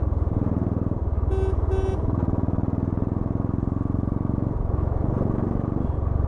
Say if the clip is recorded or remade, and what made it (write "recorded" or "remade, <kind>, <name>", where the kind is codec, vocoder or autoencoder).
recorded